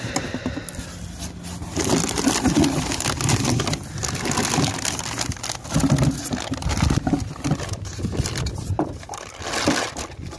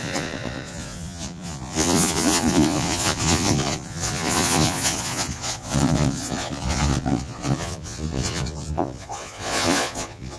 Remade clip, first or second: second